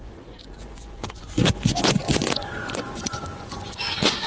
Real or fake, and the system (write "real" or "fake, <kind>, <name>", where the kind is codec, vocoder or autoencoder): fake, vocoder, Vocos